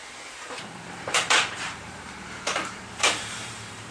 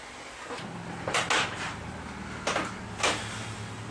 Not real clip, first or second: first